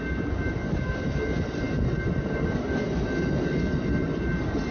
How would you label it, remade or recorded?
recorded